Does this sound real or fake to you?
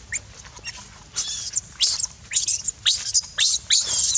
real